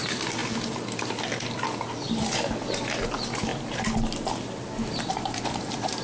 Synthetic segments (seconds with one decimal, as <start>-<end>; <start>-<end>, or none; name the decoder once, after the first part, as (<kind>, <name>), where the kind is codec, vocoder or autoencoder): 0.0-0.4 (vocoder, BigVGAN v2); 3.0-3.5; 5.1-6.0

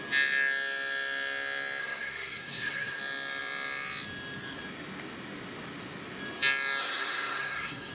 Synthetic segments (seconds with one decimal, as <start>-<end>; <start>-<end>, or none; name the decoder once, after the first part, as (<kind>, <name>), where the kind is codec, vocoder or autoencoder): 1.8-3.0 (codec, SNAC); 6.8-7.9